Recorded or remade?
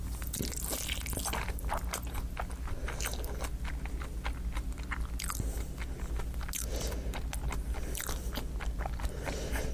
recorded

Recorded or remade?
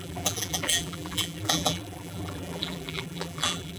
remade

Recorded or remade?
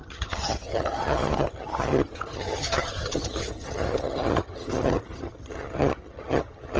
remade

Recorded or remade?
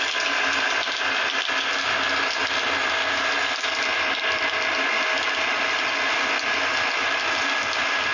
recorded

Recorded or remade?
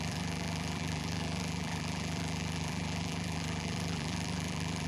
remade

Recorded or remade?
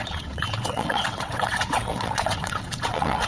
remade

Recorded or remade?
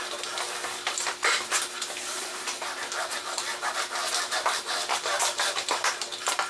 remade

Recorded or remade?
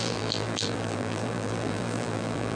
remade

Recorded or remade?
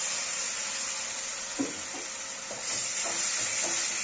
recorded